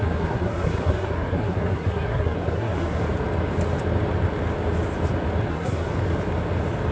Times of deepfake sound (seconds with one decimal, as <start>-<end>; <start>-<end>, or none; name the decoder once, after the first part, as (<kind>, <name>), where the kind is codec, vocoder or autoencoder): 0.0-3.0 (codec, SNAC); 5.5-5.9